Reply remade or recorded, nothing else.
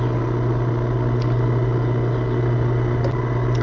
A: recorded